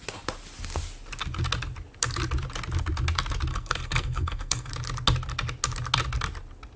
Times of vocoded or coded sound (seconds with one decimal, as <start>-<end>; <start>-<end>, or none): 3.5-4.7